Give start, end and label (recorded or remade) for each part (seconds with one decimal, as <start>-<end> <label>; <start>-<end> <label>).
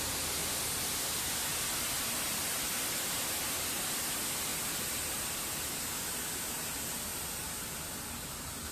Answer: 0.0-4.5 recorded; 4.5-5.2 remade; 5.2-8.7 recorded